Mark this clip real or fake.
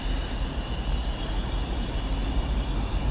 real